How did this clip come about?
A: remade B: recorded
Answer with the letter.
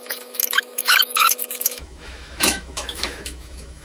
A